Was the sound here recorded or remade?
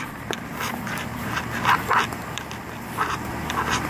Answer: remade